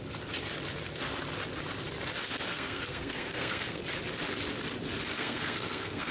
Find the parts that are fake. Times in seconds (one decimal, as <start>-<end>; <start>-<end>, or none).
2.5-3.8; 5.2-6.1